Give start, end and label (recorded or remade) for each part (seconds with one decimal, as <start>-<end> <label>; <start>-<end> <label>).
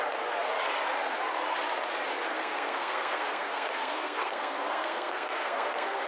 0.0-2.3 recorded; 2.3-6.1 remade